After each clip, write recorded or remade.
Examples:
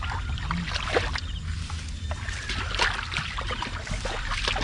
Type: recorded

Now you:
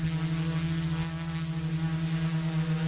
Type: recorded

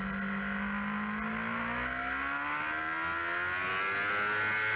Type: recorded